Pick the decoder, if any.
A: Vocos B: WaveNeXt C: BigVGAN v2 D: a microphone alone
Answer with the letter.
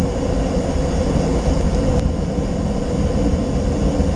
D